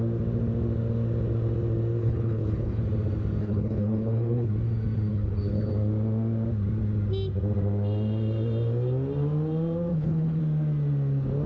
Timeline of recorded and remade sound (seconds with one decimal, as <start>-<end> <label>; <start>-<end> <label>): 0.0-2.0 recorded; 2.0-2.8 remade; 2.8-3.4 recorded; 3.4-4.5 remade; 4.5-5.1 recorded; 5.1-5.7 remade; 5.7-9.9 recorded; 9.9-10.4 remade; 10.4-11.5 recorded